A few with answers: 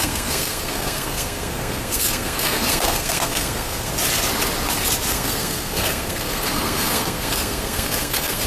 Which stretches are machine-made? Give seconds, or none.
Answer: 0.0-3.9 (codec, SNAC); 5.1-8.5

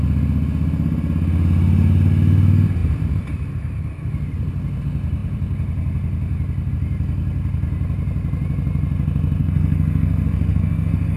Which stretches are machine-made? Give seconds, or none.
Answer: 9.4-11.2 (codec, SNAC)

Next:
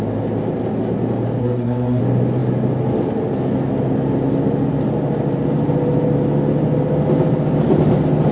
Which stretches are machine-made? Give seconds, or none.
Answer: 1.4-2.0 (codec, SNAC)

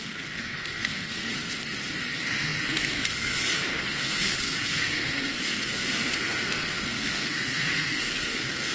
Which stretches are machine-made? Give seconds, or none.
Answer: 0.0-1.2 (codec, SNAC); 2.1-8.7

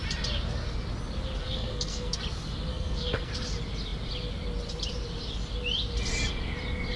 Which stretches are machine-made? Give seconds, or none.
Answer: 1.4-2.2 (codec, SNAC); 2.7-3.3